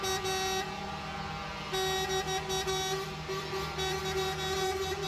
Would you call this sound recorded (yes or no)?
yes